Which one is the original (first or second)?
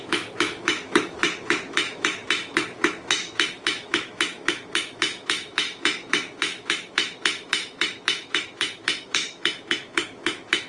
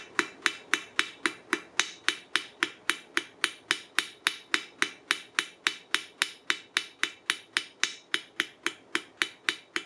second